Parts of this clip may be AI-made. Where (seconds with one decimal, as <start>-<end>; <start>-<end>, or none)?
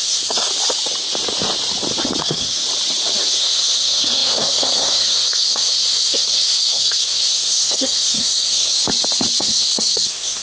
0.0-0.5; 2.2-2.6; 3.3-8.8; 9.4-10.4